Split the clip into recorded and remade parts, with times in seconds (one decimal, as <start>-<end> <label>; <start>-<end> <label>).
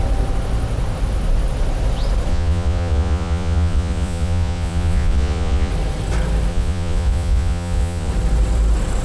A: 0.0-2.3 recorded; 2.3-5.7 remade; 5.7-6.5 recorded; 6.5-8.1 remade; 8.1-9.0 recorded